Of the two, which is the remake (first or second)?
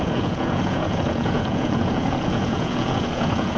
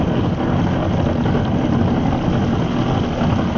first